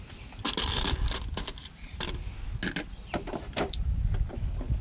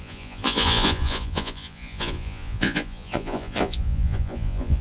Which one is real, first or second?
first